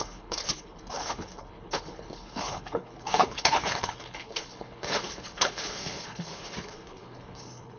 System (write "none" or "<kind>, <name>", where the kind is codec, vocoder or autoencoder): codec, HILCodec